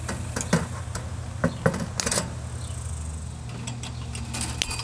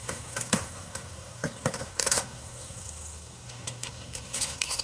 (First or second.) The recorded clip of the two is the first